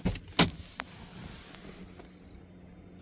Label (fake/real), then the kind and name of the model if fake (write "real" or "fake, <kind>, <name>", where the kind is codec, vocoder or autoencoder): real